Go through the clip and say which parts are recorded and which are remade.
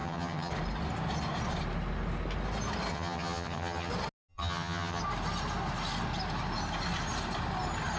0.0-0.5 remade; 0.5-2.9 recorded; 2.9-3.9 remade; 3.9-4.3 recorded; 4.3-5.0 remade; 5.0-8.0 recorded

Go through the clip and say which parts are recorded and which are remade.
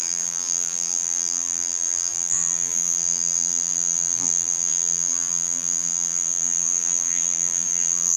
0.0-8.2 remade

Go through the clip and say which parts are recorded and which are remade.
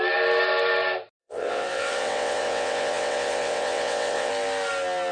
0.0-1.2 recorded; 1.2-4.3 remade; 4.3-5.1 recorded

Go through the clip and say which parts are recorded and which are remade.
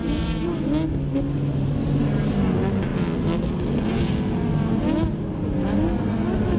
0.0-0.6 remade; 0.6-6.6 recorded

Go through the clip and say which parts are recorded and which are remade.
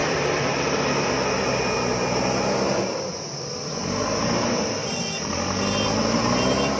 0.0-1.0 remade; 1.0-4.8 recorded; 4.8-5.3 remade; 5.3-6.8 recorded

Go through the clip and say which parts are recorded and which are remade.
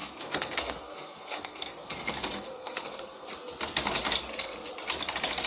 0.0-3.3 remade; 3.3-5.5 recorded